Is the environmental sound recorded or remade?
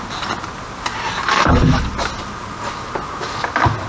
recorded